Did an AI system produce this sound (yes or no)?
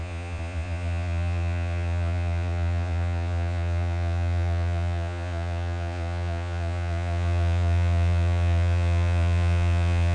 yes